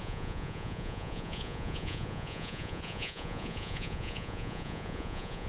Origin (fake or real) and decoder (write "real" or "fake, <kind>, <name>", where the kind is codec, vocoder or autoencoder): fake, vocoder, Vocos